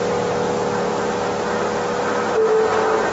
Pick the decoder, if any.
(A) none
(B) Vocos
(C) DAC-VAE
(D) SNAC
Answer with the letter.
A